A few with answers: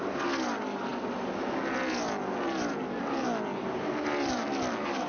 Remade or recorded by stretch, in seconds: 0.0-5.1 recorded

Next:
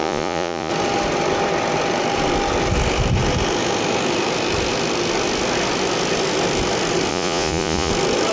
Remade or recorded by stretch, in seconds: 0.0-0.7 remade; 0.7-7.1 recorded; 7.1-7.9 remade; 7.9-8.3 recorded

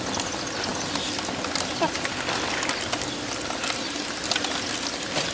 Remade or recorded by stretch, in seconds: 0.0-5.3 recorded

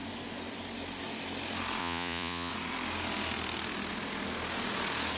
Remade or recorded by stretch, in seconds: 0.0-1.8 recorded; 1.8-2.5 remade; 2.5-5.2 recorded

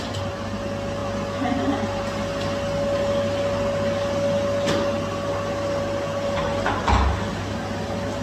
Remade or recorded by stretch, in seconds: 0.0-8.2 recorded